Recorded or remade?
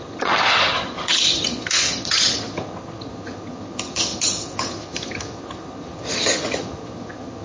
remade